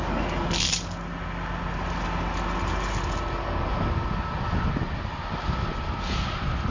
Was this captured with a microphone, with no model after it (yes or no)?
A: yes